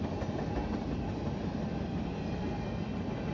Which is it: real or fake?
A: real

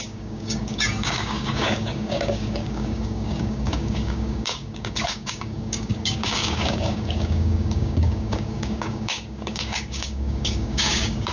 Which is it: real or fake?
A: fake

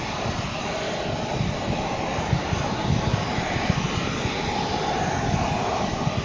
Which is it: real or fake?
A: real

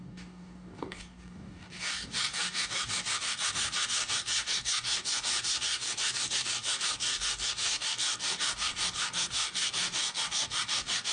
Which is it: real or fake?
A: fake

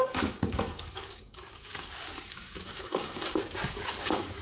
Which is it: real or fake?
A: fake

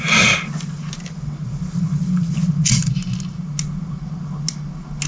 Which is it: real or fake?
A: real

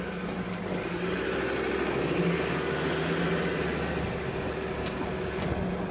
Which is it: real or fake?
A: real